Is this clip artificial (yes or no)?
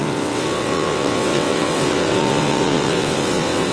yes